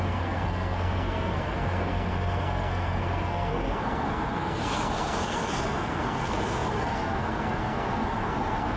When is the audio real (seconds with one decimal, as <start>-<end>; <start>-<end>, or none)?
none